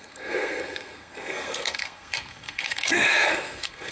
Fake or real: fake